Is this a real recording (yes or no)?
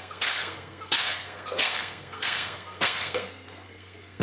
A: no